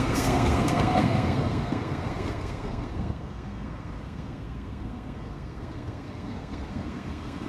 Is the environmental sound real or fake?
fake